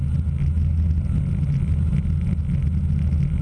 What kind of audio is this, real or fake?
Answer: real